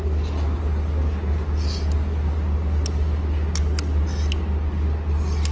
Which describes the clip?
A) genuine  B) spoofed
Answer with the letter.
A